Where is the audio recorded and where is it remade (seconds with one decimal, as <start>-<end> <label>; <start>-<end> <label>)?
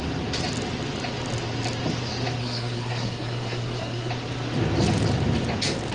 0.0-2.4 recorded; 2.4-4.1 remade; 4.1-5.9 recorded